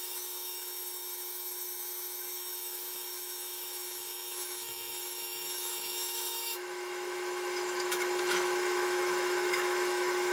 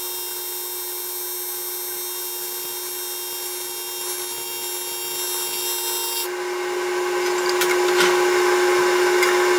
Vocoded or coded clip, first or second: first